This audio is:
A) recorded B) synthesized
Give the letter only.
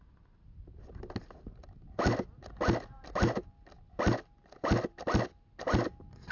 A